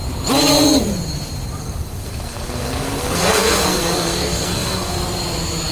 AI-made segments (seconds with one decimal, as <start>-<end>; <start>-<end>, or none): 1.6-5.0